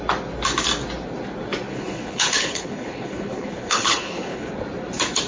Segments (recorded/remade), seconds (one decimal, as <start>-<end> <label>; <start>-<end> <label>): 0.0-1.7 recorded; 1.7-4.5 remade; 4.5-5.3 recorded